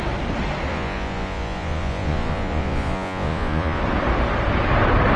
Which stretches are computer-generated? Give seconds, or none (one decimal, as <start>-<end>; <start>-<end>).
0.7-3.8